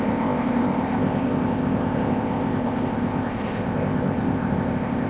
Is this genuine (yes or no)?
no